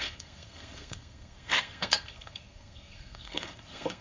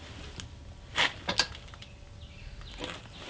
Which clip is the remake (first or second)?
first